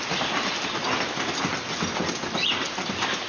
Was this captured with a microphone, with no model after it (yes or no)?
yes